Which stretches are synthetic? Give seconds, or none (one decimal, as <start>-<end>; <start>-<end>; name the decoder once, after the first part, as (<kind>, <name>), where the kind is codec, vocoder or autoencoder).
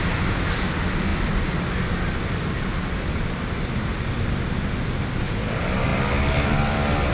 none